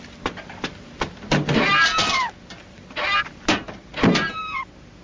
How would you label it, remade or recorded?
recorded